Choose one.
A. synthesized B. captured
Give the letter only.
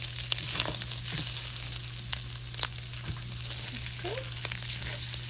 B